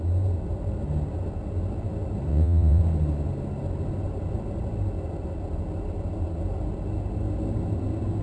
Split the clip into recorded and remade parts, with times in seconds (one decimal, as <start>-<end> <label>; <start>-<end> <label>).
0.0-2.3 recorded; 2.3-2.8 remade; 2.8-8.2 recorded